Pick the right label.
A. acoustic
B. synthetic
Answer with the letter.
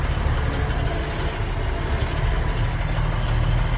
A